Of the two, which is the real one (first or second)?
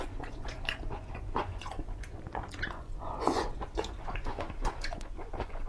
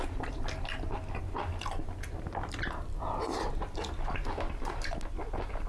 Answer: second